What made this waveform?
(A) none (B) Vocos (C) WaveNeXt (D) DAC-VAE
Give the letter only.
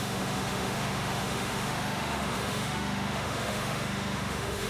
D